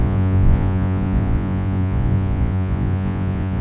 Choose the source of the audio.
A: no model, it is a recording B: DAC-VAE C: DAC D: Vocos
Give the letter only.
D